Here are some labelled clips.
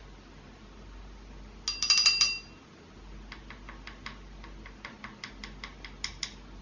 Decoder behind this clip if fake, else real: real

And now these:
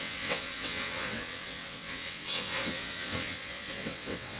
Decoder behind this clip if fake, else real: fake, vocoder, WaveNeXt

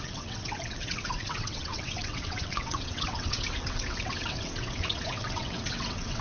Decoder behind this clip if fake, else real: fake, vocoder, WaveNeXt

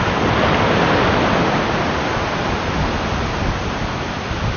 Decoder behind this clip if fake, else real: real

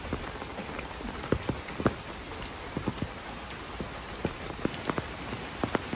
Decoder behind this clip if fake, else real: real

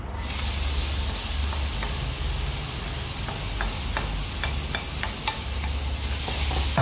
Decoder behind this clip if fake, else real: real